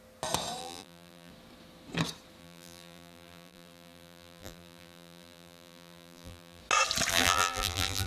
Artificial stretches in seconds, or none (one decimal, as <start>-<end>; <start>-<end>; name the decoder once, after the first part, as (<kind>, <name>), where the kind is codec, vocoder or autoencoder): 0.6-1.3 (vocoder, BigVGAN v2); 2.4-6.6; 7.1-8.1

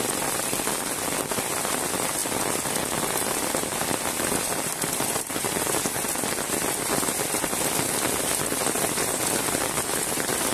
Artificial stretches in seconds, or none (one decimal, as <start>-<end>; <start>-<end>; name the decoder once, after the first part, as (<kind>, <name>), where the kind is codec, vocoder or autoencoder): none

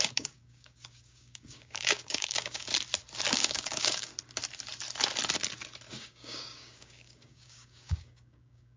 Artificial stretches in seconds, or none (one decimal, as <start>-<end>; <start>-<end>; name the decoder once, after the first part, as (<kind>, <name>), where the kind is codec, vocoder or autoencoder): 0.0-2.7 (codec, DAC); 3.3-4.1; 5.9-8.8

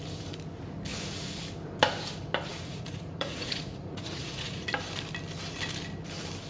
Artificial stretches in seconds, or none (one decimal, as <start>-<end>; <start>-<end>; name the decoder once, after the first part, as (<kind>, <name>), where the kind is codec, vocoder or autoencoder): 0.9-1.4 (vocoder, Vocos); 2.5-4.7

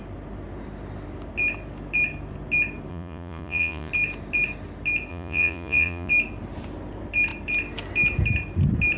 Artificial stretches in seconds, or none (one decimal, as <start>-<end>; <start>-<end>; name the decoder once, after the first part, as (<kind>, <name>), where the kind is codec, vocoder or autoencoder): 2.9-3.9 (vocoder, Vocos); 5.1-6.1

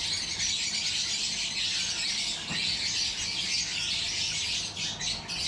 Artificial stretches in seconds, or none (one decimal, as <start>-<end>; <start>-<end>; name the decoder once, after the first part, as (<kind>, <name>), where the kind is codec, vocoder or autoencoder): none